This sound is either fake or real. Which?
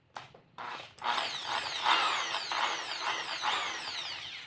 real